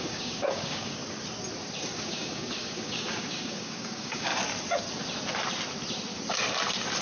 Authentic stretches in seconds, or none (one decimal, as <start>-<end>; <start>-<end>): 1.0-1.9; 4.3-7.0

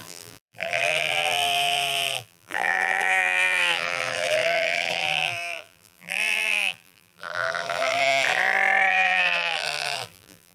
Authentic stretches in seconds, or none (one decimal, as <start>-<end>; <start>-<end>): 8.0-8.9

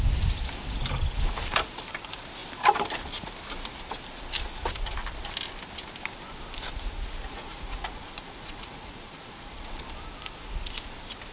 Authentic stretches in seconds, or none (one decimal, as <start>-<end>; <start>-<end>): 0.0-7.2; 9.8-11.3

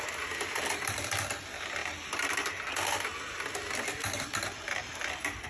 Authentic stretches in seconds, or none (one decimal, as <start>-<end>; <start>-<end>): 0.0-5.5